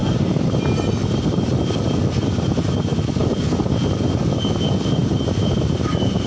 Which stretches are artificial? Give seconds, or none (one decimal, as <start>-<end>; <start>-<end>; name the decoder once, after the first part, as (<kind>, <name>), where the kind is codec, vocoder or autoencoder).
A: 0.0-0.5 (vocoder, BigVGAN v2); 5.0-6.3